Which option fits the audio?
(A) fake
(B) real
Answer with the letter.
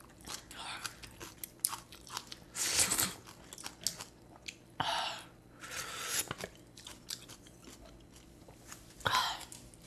B